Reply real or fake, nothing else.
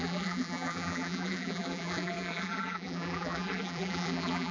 fake